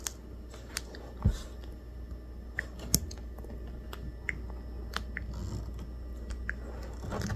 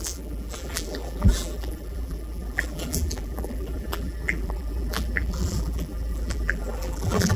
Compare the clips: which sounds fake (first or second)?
second